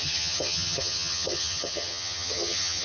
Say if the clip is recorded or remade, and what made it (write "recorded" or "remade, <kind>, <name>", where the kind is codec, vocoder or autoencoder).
remade, vocoder, HiFi-GAN